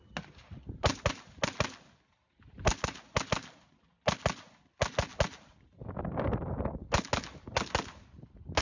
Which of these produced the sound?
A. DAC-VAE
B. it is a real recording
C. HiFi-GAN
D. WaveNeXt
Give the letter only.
B